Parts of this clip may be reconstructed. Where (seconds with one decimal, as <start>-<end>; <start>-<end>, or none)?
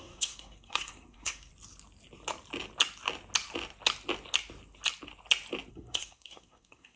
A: 0.0-1.5; 5.7-7.0